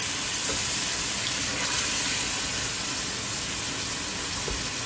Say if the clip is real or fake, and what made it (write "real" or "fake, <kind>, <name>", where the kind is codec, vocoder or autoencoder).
real